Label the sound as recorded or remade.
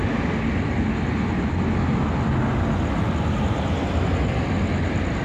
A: recorded